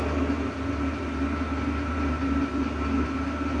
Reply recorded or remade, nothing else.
recorded